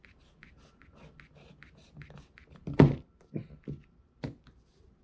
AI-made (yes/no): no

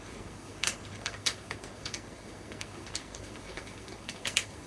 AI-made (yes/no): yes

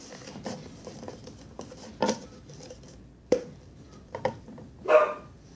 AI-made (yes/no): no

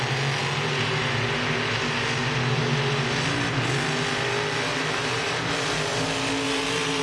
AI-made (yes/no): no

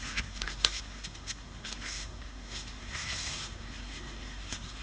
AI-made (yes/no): yes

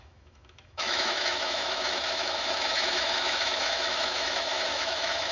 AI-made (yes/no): yes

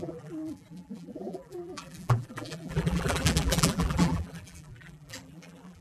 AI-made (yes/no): yes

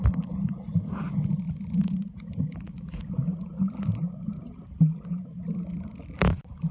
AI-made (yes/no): no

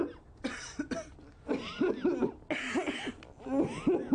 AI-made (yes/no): no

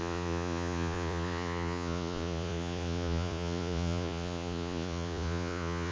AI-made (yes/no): yes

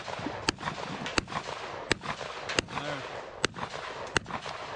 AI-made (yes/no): no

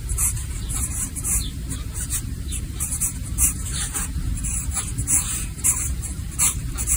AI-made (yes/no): yes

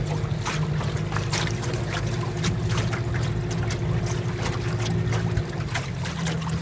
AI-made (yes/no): no